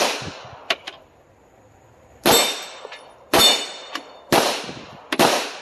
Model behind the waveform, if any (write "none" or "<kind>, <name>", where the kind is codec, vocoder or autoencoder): none